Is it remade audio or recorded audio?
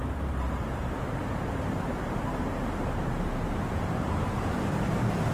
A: remade